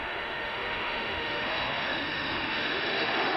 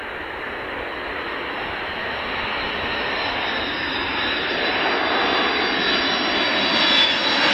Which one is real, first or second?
second